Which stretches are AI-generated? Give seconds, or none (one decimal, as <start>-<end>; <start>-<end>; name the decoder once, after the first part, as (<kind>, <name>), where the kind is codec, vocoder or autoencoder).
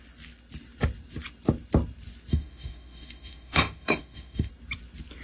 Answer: 2.3-4.5 (autoencoder, DAC-VAE)